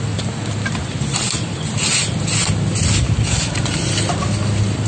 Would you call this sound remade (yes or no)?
no